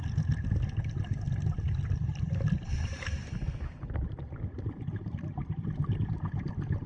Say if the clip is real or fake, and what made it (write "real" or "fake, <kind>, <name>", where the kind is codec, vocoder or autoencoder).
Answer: real